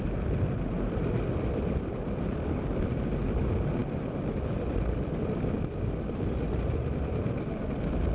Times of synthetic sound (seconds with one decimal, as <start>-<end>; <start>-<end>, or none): none